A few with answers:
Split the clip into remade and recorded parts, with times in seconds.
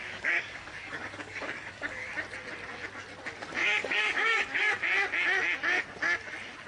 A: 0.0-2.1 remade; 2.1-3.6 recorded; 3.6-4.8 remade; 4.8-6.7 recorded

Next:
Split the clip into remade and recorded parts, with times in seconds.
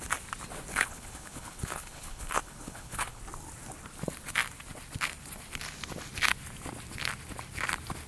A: 0.0-0.7 recorded; 0.7-3.2 remade; 3.2-8.1 recorded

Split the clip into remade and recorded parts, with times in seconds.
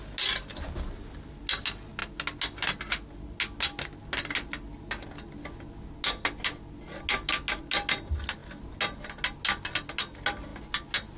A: 0.0-11.2 recorded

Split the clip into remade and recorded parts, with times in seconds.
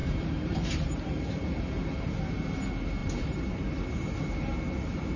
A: 0.0-1.4 remade; 1.4-3.0 recorded; 3.0-3.7 remade; 3.7-5.2 recorded